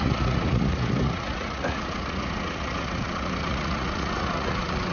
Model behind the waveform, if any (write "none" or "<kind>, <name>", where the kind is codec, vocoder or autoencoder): vocoder, Vocos